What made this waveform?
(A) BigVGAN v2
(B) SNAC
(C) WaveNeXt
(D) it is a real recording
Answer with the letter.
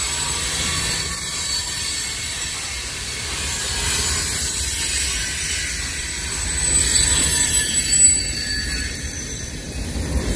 A